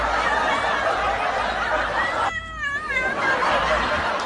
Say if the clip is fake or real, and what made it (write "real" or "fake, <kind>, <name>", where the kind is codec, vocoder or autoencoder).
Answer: real